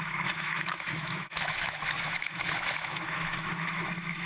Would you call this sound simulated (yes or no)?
yes